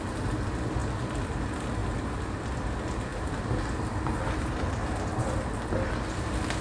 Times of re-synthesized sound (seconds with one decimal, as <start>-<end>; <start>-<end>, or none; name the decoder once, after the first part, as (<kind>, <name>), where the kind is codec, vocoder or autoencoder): none